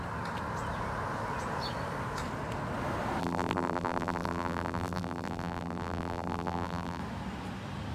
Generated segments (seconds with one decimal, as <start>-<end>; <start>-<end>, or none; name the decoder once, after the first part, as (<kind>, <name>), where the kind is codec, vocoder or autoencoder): 3.2-7.0 (vocoder, BigVGAN v2)